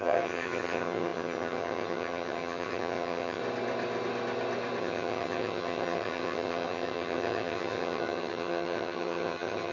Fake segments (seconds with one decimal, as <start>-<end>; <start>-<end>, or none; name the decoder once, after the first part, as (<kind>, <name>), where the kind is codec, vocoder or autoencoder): 0.0-3.4 (vocoder, HiFi-GAN); 4.8-9.7